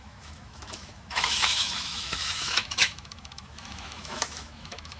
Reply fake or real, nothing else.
fake